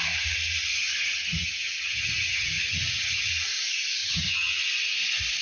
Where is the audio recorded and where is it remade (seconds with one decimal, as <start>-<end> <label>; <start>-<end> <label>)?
0.0-0.7 recorded; 0.7-3.3 remade; 3.3-4.0 recorded; 4.0-4.5 remade; 4.5-5.4 recorded